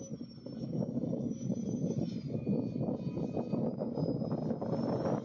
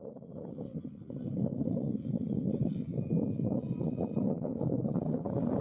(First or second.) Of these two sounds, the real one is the first